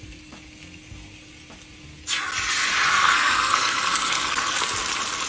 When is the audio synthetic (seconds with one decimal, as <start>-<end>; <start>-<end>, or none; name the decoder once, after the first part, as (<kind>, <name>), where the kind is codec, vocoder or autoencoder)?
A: 2.9-4.6 (codec, SNAC)